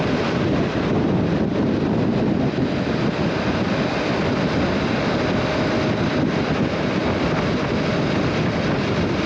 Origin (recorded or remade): recorded